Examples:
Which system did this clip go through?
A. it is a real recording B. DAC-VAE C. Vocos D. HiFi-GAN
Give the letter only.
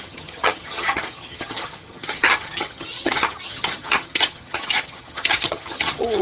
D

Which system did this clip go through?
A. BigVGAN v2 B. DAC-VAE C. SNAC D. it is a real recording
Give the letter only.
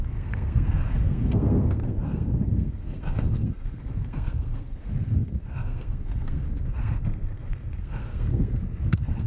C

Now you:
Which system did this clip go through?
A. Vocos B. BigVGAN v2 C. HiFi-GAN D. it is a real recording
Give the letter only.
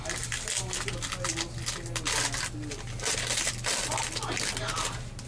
D